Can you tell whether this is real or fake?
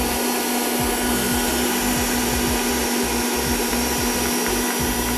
real